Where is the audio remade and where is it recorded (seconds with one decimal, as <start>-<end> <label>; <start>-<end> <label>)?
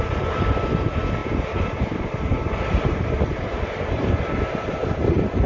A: 0.0-5.5 recorded